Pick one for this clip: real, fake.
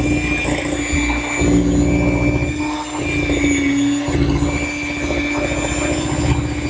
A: real